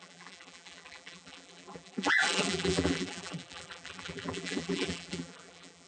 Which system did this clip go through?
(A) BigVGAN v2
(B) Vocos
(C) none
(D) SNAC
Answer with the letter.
A